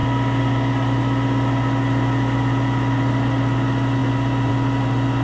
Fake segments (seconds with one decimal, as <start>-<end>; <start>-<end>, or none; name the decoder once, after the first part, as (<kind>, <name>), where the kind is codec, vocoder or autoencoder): none